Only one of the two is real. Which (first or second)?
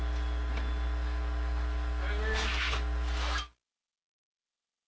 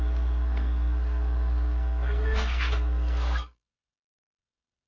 first